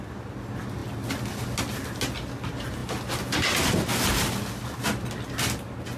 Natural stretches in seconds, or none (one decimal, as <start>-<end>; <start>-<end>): 0.0-6.0